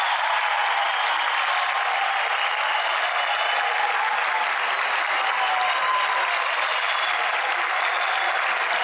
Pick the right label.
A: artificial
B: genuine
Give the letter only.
B